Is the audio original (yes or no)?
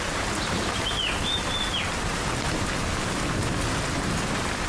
yes